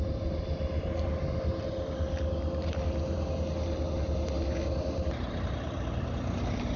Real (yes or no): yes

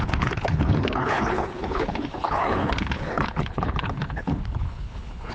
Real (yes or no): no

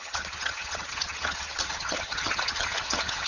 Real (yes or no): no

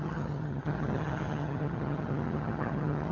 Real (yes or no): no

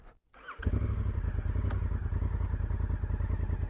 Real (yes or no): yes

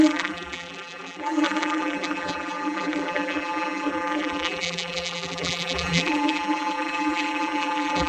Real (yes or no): no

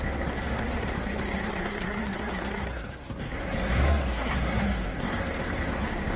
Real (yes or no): no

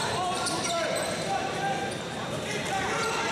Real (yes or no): no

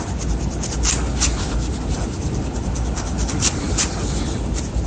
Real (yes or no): yes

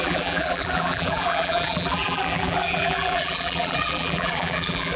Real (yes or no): no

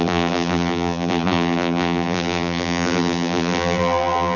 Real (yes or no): no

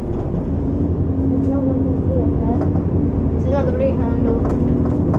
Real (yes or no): yes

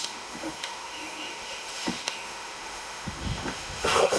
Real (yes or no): no